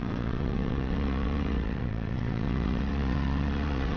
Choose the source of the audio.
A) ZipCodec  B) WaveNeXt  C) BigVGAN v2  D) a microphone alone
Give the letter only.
B